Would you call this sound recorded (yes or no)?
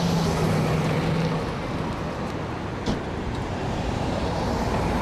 yes